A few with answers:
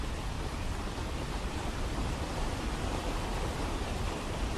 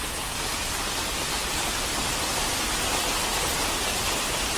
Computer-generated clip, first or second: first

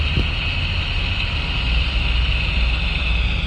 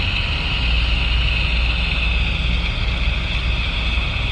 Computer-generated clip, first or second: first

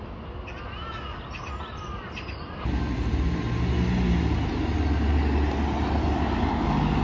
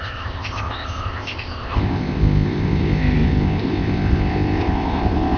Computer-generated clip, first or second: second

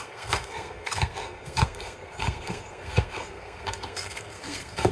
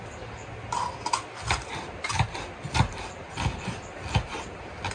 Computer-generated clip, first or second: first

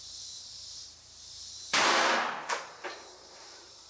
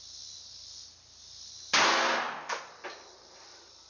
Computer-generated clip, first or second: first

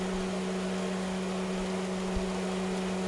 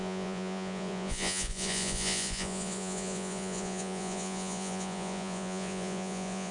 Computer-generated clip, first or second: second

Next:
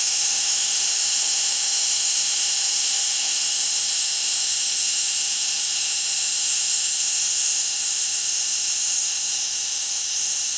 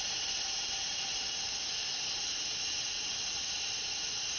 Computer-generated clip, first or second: first